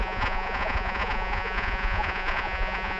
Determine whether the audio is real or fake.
fake